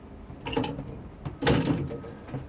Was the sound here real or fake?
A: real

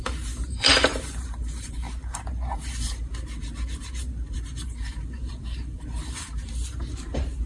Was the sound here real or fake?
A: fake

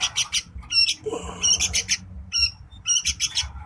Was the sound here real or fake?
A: fake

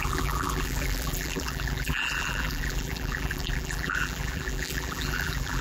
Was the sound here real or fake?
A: fake